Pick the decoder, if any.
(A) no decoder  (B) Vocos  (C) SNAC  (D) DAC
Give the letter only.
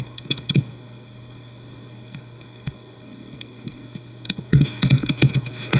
C